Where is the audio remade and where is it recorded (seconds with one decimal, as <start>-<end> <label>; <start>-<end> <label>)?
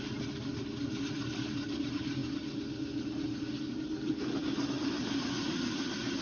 0.0-6.2 recorded